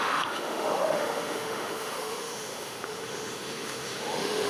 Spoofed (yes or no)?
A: yes